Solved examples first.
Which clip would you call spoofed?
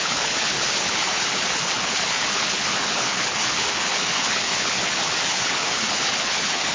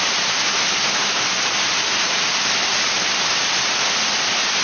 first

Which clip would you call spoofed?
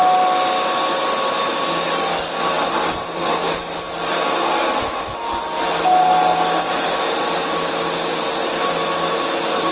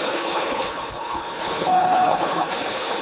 second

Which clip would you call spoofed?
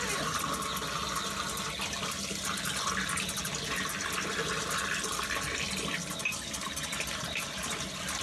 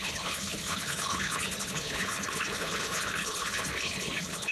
second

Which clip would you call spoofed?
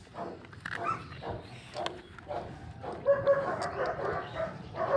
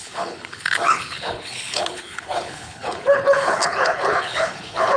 second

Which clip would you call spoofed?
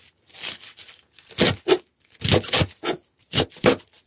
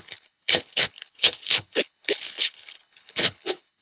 second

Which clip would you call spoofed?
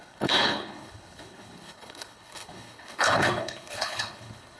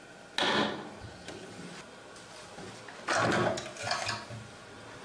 first